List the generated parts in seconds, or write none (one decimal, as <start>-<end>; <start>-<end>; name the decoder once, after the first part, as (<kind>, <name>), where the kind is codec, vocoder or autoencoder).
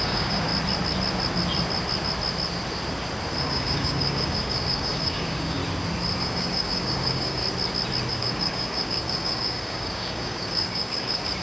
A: 0.0-0.5 (codec, DAC); 3.4-5.6; 6.2-7.4; 8.1-11.4